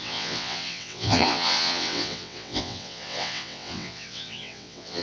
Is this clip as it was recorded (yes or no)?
no